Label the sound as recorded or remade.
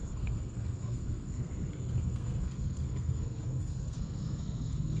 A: remade